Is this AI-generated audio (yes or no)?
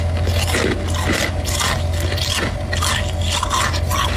no